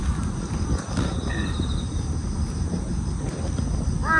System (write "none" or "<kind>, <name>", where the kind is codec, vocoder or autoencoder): none